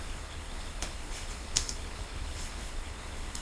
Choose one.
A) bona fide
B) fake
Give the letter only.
B